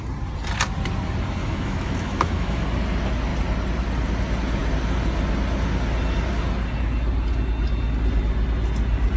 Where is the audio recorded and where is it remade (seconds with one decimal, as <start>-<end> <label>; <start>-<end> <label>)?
0.0-1.4 recorded; 1.4-2.6 remade; 2.6-9.2 recorded